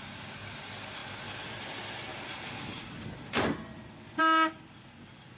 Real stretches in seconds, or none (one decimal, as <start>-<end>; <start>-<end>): 0.0-5.4